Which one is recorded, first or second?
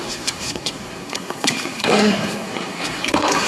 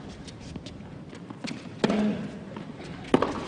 second